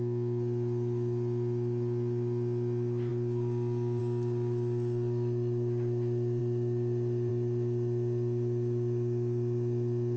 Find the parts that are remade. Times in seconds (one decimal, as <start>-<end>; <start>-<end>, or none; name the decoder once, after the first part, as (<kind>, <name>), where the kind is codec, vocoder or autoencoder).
none

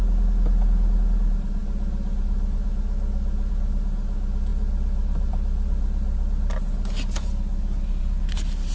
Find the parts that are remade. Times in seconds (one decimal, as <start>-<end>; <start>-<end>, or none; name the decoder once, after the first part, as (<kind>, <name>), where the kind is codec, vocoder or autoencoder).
none